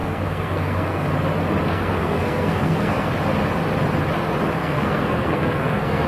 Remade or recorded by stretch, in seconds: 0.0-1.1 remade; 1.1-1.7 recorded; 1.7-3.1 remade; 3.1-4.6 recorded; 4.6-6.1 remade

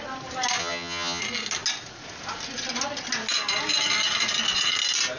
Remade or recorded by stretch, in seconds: 0.0-0.6 recorded; 0.6-1.2 remade; 1.2-5.2 recorded

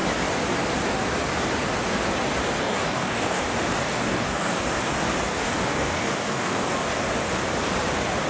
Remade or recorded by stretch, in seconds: 0.0-2.6 recorded; 2.6-3.4 remade; 3.4-3.8 recorded; 3.8-4.6 remade; 4.6-5.4 recorded; 5.4-6.7 remade; 6.7-8.3 recorded

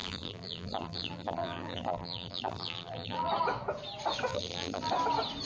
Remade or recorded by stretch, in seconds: 0.0-3.3 remade; 3.3-4.3 recorded; 4.3-4.9 remade; 4.9-5.5 recorded

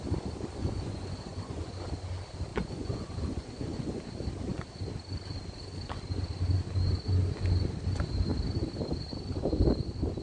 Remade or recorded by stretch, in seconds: 0.0-0.6 recorded; 0.6-1.7 remade; 1.7-2.5 recorded; 2.5-4.0 remade; 4.0-10.2 recorded